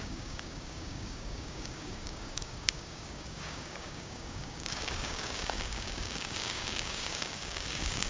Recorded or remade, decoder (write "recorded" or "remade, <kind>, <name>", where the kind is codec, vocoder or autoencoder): remade, codec, DAC